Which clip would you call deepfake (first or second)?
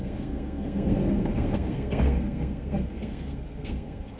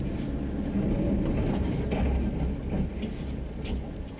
first